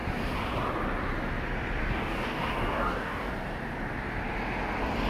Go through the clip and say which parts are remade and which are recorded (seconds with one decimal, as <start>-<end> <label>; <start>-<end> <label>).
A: 0.0-1.8 recorded; 1.8-3.3 remade; 3.3-5.1 recorded